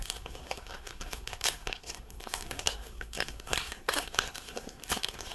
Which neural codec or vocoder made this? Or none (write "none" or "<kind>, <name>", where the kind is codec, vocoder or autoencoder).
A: codec, SNAC